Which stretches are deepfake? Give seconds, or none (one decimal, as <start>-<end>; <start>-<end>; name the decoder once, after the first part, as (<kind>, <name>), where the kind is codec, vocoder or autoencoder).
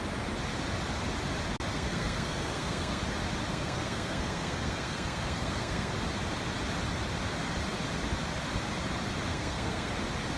1.7-3.0 (codec, SNAC); 3.5-5.9; 9.3-9.9